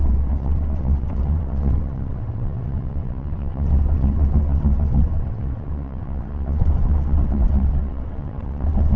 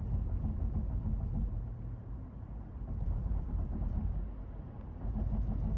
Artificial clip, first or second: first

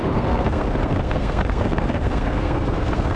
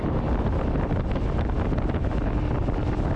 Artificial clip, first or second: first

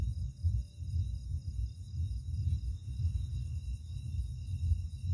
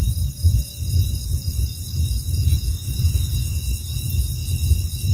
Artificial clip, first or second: second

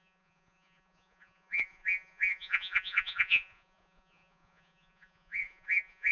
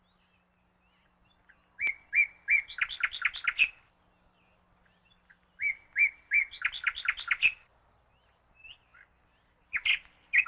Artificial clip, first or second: first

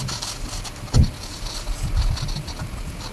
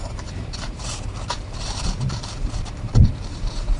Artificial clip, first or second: second